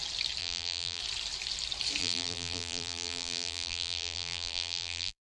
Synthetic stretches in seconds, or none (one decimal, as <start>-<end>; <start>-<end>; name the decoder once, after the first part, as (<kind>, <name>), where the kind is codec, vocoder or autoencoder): 0.4-1.0 (vocoder, BigVGAN v2); 2.0-5.2